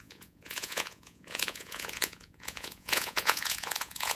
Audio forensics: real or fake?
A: fake